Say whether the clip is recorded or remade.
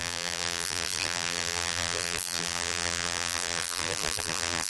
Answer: remade